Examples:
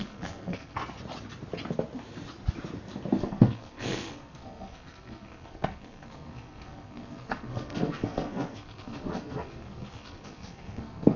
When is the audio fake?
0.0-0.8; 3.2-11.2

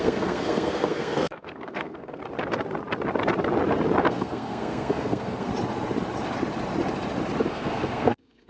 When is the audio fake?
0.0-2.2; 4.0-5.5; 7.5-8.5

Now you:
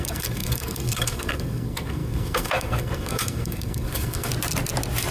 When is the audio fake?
0.0-4.3

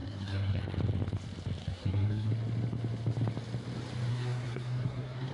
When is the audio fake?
0.0-0.6; 1.6-2.3; 4.1-5.3

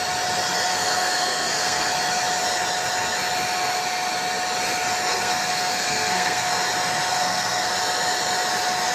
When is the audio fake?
0.7-1.9; 5.1-6.5; 7.1-7.7

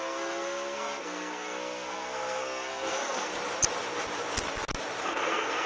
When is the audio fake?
0.0-3.3; 5.0-5.7

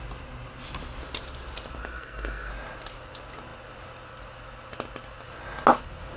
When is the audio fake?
1.8-2.5